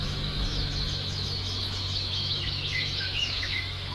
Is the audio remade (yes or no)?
yes